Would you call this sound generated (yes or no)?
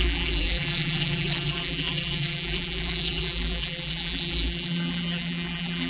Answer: yes